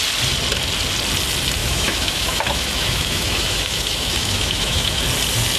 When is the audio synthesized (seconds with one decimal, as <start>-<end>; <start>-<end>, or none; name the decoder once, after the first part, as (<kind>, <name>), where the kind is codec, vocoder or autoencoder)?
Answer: 1.6-5.0 (autoencoder, DAC-VAE)